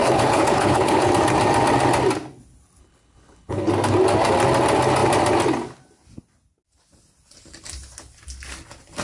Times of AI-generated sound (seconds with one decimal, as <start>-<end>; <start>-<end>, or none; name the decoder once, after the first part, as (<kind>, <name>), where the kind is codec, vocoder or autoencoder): 0.0-1.1 (codec, HILCodec); 2.8-3.7